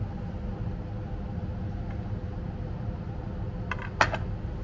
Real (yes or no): yes